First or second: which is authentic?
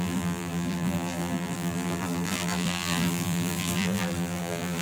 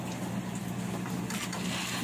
second